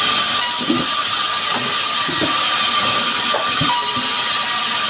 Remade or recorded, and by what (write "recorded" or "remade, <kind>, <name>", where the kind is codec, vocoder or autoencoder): recorded